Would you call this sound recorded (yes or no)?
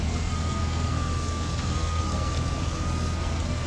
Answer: no